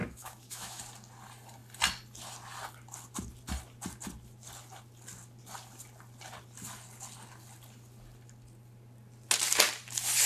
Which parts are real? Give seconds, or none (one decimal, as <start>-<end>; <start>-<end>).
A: 0.8-10.3